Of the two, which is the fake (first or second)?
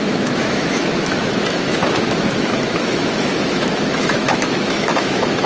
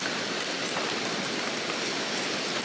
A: first